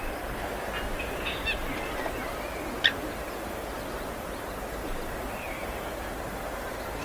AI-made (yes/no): no